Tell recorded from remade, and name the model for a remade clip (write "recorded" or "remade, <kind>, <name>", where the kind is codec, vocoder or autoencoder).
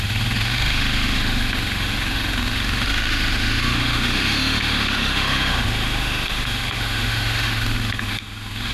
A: remade, autoencoder, DAC-VAE